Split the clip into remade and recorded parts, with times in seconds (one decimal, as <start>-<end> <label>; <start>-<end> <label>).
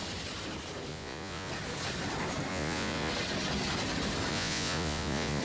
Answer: 0.0-0.9 recorded; 0.9-1.5 remade; 1.5-2.5 recorded; 2.5-3.1 remade; 3.1-4.3 recorded; 4.3-5.4 remade